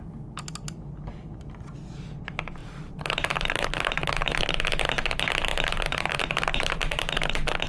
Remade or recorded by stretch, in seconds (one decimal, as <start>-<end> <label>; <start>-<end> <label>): 0.0-2.6 recorded; 2.6-4.4 remade; 4.4-5.5 recorded; 5.5-7.3 remade; 7.3-7.7 recorded